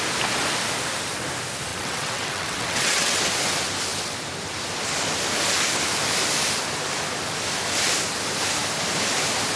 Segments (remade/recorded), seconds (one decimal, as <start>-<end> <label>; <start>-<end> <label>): 0.0-1.7 recorded; 1.7-3.2 remade; 3.2-9.6 recorded